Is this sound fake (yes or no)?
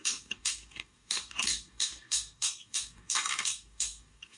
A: yes